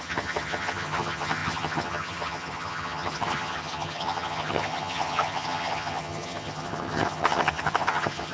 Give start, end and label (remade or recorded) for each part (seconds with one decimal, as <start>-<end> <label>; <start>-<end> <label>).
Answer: 0.0-8.3 remade